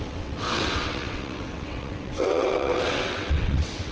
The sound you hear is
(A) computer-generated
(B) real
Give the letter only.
A